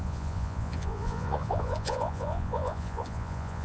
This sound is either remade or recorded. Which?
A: remade